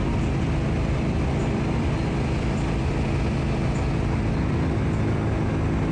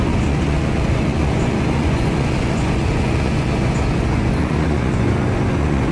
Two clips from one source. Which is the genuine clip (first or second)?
first